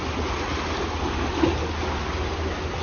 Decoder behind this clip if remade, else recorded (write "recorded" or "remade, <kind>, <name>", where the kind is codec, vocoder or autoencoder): recorded